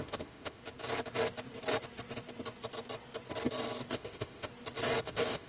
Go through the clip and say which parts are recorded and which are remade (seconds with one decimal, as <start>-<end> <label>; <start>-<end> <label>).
0.0-0.6 remade; 0.6-3.9 recorded; 3.9-4.5 remade; 4.5-5.0 recorded; 5.0-5.5 remade